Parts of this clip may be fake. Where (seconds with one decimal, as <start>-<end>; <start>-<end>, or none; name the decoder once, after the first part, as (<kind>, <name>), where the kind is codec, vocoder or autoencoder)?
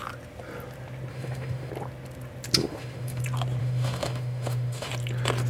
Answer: 1.1-1.7 (autoencoder, DAC-VAE); 2.6-3.2; 3.6-4.9